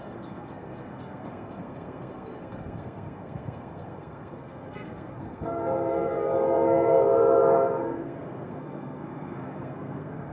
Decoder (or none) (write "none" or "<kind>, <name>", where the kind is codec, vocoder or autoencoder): codec, SNAC